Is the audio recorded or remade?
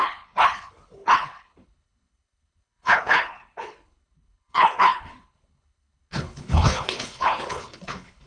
remade